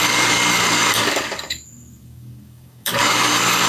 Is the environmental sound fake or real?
fake